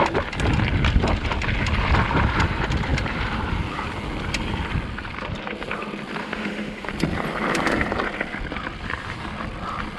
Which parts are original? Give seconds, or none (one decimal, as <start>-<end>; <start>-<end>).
0.0-6.2; 6.9-10.0